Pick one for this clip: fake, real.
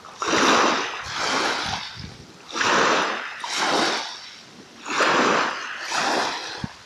real